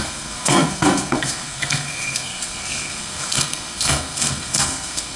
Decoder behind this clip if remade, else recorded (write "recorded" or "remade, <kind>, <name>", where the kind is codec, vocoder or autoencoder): remade, codec, SNAC